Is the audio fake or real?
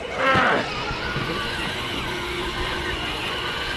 fake